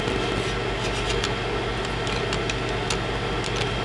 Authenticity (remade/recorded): recorded